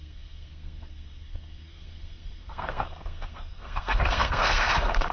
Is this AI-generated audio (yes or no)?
yes